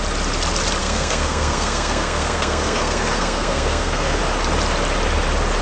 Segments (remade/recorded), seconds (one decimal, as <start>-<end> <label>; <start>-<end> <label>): 0.0-0.8 recorded; 0.8-4.2 remade; 4.2-5.6 recorded